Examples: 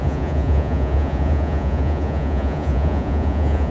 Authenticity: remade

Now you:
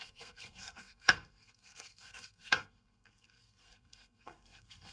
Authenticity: remade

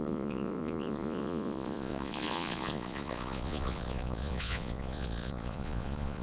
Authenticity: remade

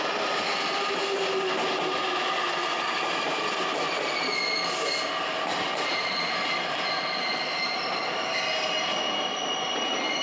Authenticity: recorded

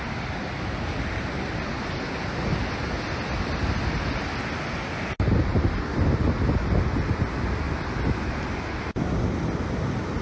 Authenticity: recorded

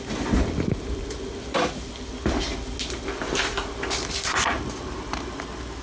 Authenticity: recorded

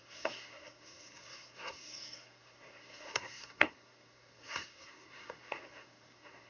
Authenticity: remade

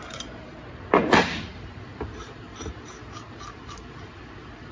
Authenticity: remade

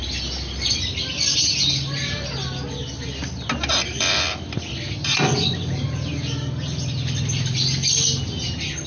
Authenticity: recorded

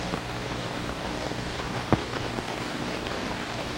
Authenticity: remade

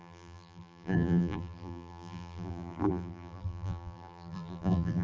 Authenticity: remade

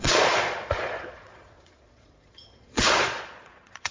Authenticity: remade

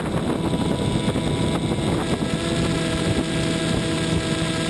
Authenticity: recorded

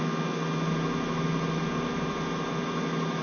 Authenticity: recorded